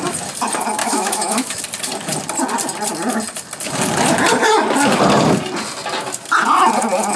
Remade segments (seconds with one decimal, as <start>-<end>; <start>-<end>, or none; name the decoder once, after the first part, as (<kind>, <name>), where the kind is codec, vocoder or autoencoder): 0.8-1.6 (autoencoder, DAC-VAE)